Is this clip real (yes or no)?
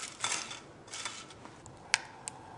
yes